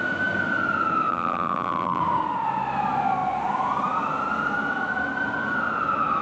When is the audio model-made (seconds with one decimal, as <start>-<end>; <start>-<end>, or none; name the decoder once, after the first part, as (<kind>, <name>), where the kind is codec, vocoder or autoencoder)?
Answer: 1.1-2.0 (vocoder, BigVGAN v2)